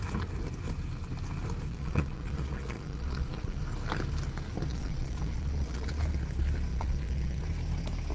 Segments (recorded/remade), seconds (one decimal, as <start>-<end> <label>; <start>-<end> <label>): 0.0-1.7 recorded; 1.7-3.6 remade; 3.6-4.7 recorded; 4.7-6.0 remade; 6.0-6.7 recorded; 6.7-7.4 remade; 7.4-8.1 recorded

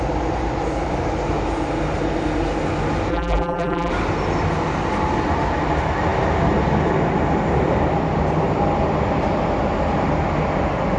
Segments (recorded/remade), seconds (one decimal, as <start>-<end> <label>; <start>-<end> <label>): 0.0-3.1 recorded; 3.1-3.9 remade; 3.9-11.0 recorded

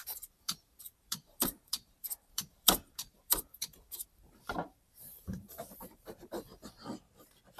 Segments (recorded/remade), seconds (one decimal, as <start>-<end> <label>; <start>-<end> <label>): 0.0-6.5 remade; 6.5-7.6 recorded

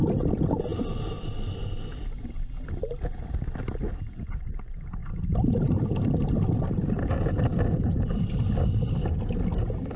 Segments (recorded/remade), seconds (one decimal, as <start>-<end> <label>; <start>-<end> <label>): 0.0-5.0 recorded; 5.0-6.6 remade; 6.6-10.0 recorded

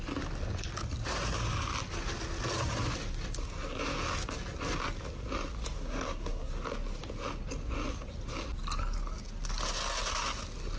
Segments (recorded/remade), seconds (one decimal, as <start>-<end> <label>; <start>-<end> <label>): 0.0-5.8 recorded; 5.8-6.5 remade; 6.5-10.8 recorded

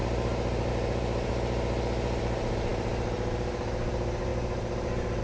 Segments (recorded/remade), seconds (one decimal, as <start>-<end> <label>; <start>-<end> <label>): 0.0-1.3 remade; 1.3-2.2 recorded; 2.2-5.2 remade